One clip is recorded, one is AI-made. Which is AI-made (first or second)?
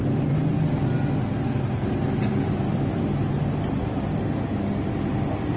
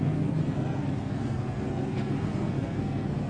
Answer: second